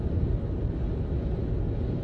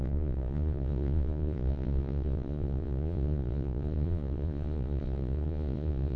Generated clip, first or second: second